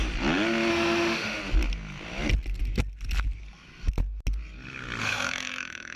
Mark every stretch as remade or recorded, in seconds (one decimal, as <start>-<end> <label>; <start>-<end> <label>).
0.0-0.7 recorded; 0.7-1.4 remade; 1.4-5.0 recorded; 5.0-6.0 remade